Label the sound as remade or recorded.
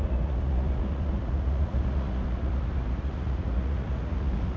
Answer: remade